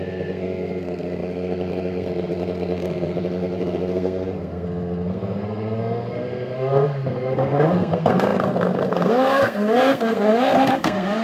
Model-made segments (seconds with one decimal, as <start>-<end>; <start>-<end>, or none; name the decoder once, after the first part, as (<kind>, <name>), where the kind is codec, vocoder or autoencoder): 0.0-11.2 (codec, SNAC)